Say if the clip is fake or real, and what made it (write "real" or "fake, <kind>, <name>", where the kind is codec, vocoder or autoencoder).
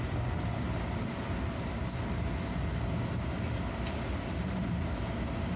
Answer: real